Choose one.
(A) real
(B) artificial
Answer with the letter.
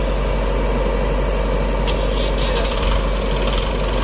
A